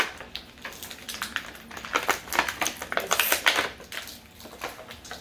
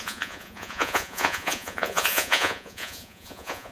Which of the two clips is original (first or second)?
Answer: first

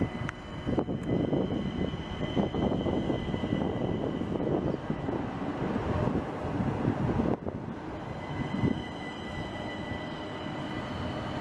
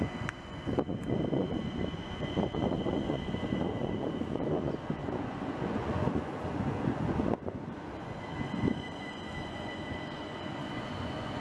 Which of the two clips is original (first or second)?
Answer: first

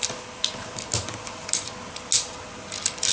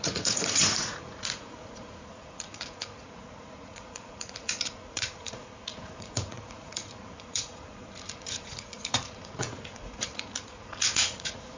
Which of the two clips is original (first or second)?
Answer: first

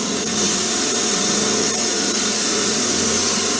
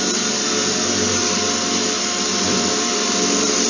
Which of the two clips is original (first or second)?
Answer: second